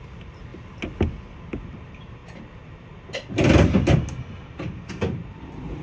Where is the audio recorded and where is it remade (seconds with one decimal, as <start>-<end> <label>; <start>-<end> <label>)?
0.0-0.5 remade; 0.5-1.8 recorded; 1.8-2.2 remade; 2.2-4.9 recorded; 4.9-5.8 remade